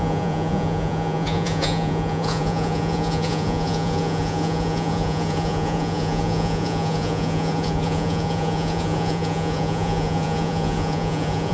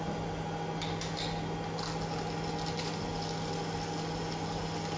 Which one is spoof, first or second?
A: first